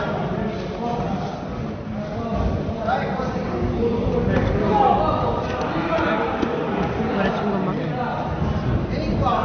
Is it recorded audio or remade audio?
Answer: recorded